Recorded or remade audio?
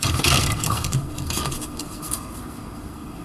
remade